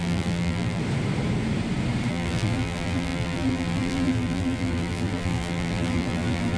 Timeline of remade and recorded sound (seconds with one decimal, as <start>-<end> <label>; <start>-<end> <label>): 0.0-0.8 remade; 0.8-2.1 recorded; 2.1-6.6 remade